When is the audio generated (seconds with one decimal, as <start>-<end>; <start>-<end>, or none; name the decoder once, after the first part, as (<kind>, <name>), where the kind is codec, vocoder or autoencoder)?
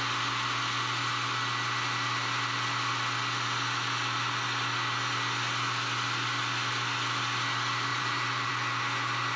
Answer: 7.9-8.5 (vocoder, BigVGAN v2)